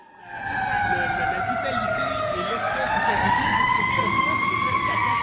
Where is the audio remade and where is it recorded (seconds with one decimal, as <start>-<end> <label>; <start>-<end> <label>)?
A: 0.0-1.8 recorded; 1.8-5.2 remade